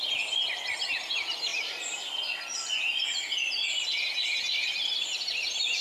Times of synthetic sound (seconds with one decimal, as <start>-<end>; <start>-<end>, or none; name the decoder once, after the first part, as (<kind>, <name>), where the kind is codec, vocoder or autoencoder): none